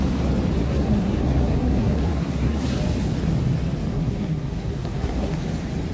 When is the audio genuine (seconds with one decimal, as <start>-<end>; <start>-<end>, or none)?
0.0-0.6; 2.8-3.9; 5.4-5.9